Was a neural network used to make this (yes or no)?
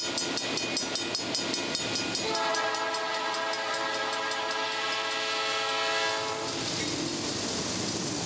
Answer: no